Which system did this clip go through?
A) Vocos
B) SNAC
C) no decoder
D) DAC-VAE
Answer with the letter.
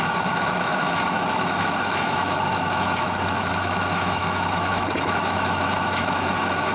D